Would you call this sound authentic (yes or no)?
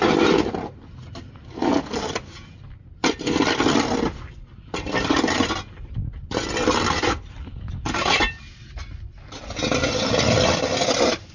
yes